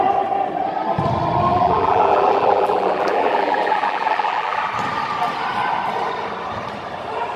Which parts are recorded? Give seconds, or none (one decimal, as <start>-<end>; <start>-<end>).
0.0-1.5; 4.6-7.4